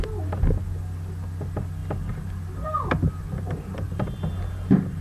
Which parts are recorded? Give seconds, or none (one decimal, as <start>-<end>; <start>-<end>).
0.0-5.0